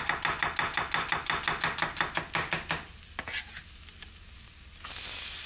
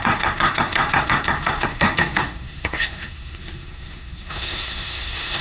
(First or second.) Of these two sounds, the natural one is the first